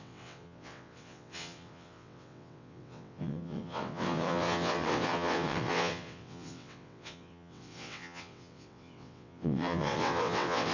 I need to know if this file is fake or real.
fake